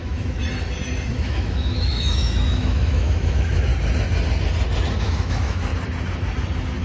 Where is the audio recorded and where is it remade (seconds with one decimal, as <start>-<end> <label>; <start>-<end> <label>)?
0.0-0.4 remade; 0.4-1.1 recorded; 1.1-3.7 remade; 3.7-5.0 recorded; 5.0-5.7 remade; 5.7-6.8 recorded